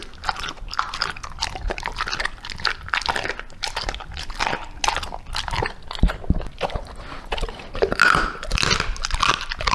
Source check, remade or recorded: recorded